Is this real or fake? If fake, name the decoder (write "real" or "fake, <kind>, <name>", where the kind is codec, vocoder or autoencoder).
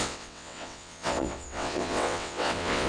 fake, vocoder, WaveNeXt